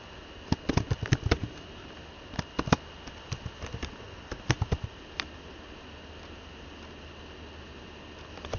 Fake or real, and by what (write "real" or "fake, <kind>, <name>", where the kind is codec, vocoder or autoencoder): real